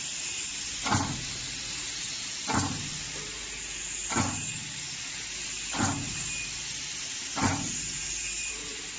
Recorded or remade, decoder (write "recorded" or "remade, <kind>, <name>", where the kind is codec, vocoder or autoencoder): recorded